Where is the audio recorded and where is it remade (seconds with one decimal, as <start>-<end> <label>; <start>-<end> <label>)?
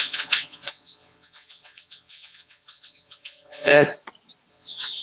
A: 0.0-3.7 remade; 3.7-4.5 recorded; 4.5-5.0 remade